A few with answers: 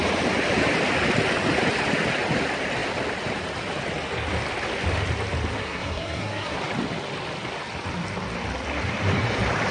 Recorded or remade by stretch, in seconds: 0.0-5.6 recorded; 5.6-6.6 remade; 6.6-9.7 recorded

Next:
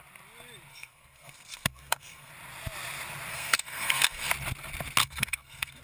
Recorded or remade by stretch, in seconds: 0.0-0.7 recorded; 0.7-2.3 remade; 2.3-3.3 recorded; 3.3-4.3 remade; 4.3-5.0 recorded; 5.0-5.8 remade

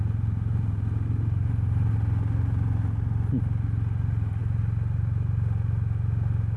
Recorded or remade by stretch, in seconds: 0.0-6.6 recorded

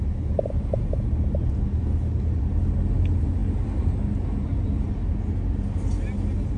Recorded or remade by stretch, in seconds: 0.0-6.6 recorded

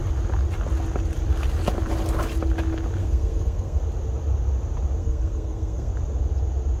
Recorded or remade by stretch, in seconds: 0.0-3.0 recorded; 3.0-3.8 remade; 3.8-5.0 recorded; 5.0-5.9 remade; 5.9-6.8 recorded